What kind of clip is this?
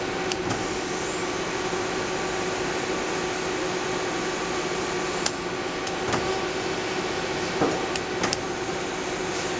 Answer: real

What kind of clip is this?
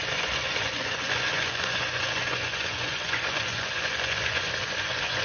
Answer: fake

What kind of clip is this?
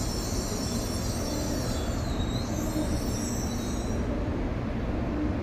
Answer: real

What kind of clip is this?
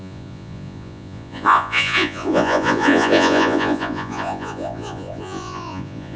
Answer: fake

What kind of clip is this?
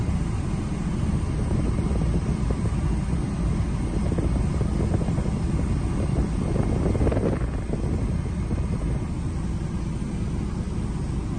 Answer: real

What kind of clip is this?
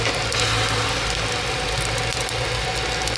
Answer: real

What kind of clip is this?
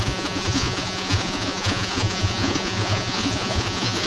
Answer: fake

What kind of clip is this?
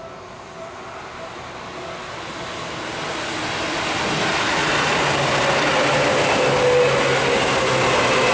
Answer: real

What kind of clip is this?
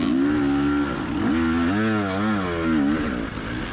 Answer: real